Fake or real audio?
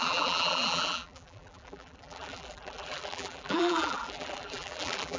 fake